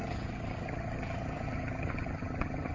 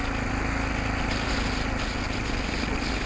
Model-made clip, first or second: first